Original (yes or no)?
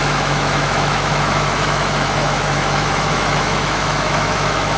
no